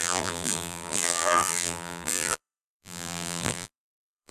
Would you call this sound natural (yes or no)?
no